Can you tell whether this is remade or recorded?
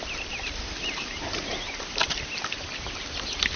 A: recorded